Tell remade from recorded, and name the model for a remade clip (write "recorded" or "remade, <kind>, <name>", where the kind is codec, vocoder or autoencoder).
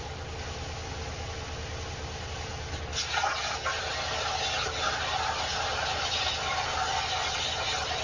recorded